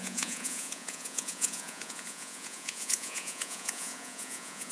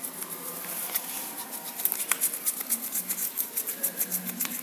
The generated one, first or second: first